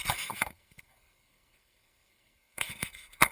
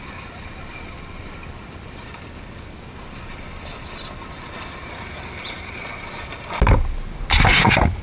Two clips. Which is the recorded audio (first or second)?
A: second